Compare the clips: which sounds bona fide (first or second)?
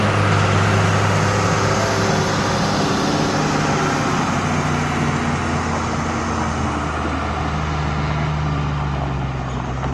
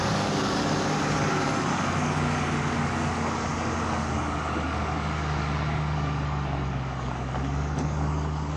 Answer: first